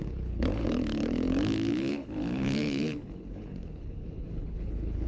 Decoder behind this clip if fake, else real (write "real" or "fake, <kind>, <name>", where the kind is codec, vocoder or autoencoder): fake, codec, HILCodec